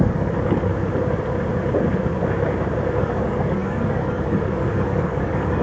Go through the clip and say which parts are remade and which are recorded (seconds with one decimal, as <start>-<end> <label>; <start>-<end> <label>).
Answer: 0.0-0.7 remade; 0.7-3.0 recorded; 3.0-5.6 remade